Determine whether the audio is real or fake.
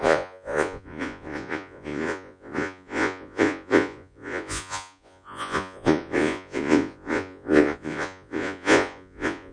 fake